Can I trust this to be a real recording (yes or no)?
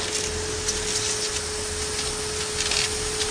yes